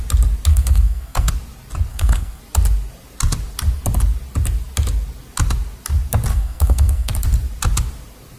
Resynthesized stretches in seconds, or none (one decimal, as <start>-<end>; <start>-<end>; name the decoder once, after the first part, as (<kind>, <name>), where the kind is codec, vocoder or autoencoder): 0.5-1.3 (codec, SNAC); 1.9-2.4; 6.3-7.1